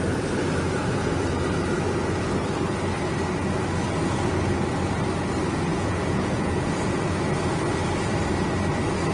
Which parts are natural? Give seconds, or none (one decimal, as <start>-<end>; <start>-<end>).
0.0-5.7; 7.2-9.1